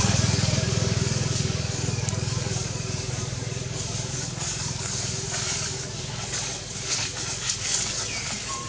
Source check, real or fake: fake